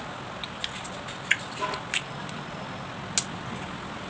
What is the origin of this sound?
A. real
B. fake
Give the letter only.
A